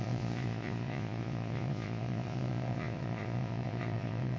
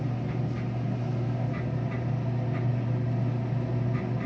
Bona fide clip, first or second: second